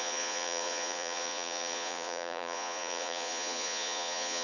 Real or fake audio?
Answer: fake